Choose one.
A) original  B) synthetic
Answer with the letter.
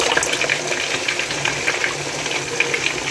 A